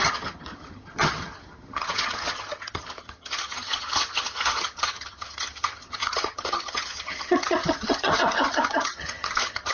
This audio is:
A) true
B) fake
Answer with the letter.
B